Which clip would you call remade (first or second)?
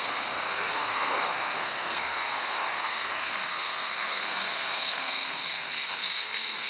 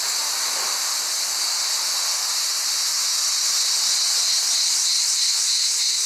first